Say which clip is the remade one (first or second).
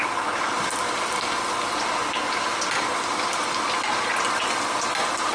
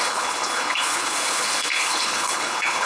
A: second